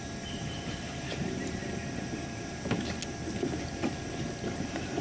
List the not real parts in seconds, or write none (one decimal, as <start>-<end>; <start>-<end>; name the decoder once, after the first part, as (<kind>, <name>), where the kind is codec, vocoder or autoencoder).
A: 0.0-1.6 (vocoder, BigVGAN v2); 4.6-5.0